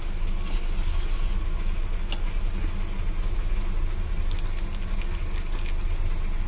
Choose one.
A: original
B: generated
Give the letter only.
A